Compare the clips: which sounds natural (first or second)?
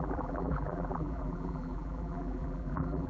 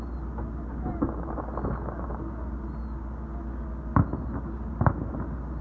second